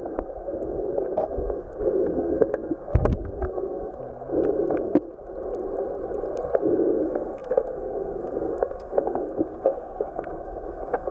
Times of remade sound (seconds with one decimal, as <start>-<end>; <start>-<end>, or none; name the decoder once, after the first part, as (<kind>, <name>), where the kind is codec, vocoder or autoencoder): 0.0-4.0 (codec, SNAC); 6.6-11.1